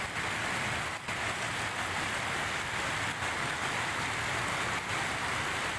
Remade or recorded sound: recorded